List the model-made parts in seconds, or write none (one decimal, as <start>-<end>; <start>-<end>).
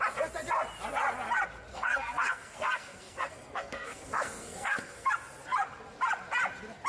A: 1.7-5.1